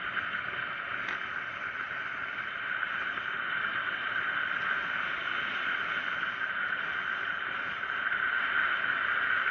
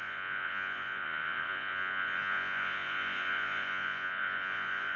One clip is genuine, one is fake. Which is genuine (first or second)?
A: first